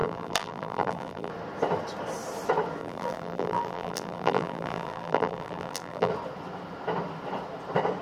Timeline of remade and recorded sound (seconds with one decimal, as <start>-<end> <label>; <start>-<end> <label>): 0.0-1.3 remade; 1.3-2.8 recorded; 2.8-6.1 remade; 6.1-8.0 recorded